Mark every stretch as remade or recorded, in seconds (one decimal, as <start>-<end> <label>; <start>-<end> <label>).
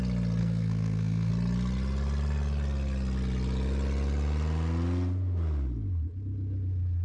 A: 0.0-0.4 recorded; 0.4-1.3 remade; 1.3-7.0 recorded